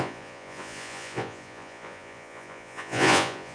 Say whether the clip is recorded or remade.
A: remade